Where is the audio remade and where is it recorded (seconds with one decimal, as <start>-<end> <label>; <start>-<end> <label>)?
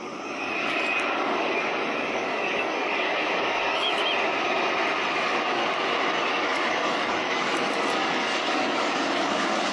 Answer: 0.0-4.0 remade; 4.0-5.1 recorded; 5.1-5.6 remade; 5.6-6.3 recorded; 6.3-9.7 remade